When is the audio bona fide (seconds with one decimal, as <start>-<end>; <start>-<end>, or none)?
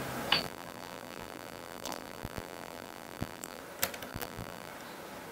0.0-0.4; 3.6-4.1; 4.7-5.3